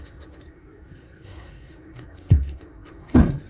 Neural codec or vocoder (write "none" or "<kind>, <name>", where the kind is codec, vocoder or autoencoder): codec, SNAC